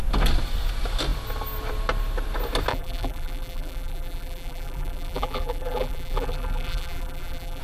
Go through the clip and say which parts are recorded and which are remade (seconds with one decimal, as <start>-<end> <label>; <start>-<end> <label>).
0.0-2.7 recorded; 2.7-7.6 remade